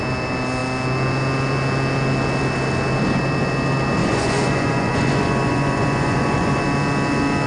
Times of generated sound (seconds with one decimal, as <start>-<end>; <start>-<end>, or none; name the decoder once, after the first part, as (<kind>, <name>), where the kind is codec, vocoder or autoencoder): 4.0-6.6 (vocoder, Vocos)